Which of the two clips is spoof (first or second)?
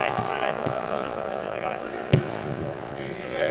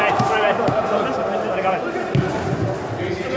first